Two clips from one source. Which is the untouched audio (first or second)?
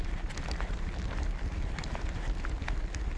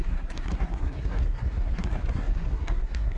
first